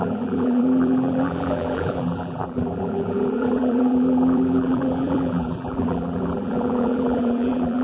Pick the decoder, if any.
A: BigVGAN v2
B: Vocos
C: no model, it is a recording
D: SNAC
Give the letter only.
A